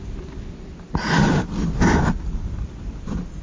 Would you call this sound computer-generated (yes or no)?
no